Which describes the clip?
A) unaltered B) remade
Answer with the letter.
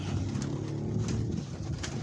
A